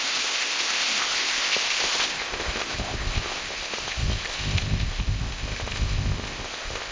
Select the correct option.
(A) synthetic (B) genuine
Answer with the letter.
A